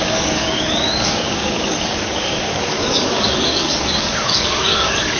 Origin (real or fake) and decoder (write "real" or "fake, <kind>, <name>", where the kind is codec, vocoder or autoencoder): fake, codec, DAC